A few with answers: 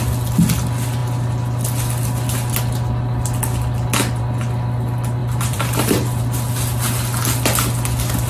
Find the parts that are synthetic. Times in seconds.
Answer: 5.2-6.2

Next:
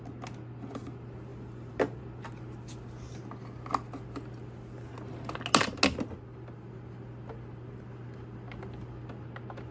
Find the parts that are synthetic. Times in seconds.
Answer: 1.3-2.0

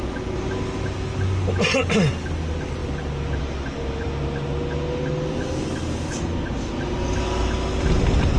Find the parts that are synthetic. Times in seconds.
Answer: none

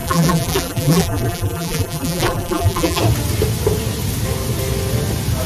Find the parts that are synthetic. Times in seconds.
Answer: 0.0-3.0

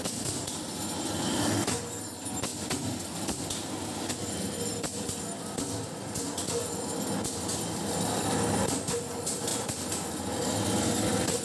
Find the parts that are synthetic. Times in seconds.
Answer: 9.5-10.3